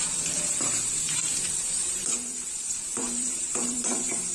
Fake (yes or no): yes